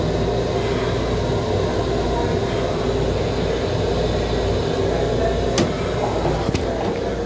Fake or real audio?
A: real